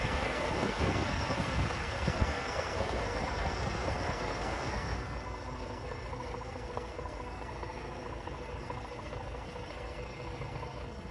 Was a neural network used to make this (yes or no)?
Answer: yes